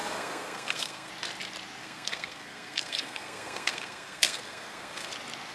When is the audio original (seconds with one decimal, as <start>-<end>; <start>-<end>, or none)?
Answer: 1.1-1.8; 5.1-5.5